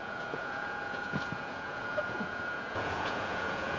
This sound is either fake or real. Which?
fake